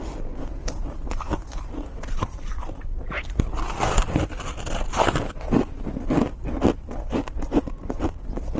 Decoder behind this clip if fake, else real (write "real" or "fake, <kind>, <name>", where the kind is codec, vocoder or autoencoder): real